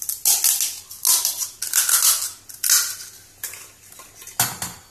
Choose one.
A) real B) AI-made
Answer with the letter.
A